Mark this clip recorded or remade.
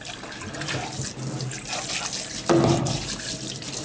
recorded